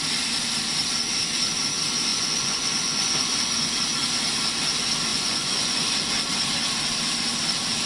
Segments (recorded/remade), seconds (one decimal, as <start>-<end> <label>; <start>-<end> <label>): 0.0-2.1 recorded; 2.1-3.7 remade; 3.7-5.1 recorded; 5.1-5.9 remade; 5.9-7.9 recorded